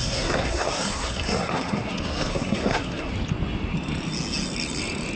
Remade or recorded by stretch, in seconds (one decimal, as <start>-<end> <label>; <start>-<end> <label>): 0.0-3.1 remade; 3.1-5.2 recorded